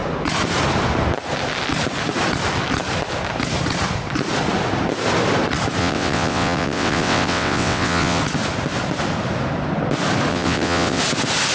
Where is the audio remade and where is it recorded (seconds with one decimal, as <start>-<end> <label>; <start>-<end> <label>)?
0.0-5.8 recorded; 5.8-8.2 remade; 8.2-10.3 recorded; 10.3-11.0 remade; 11.0-11.5 recorded